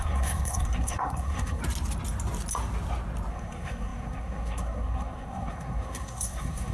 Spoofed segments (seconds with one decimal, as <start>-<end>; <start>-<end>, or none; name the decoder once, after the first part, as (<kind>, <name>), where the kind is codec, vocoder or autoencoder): 0.0-1.6 (codec, SNAC); 3.3-6.7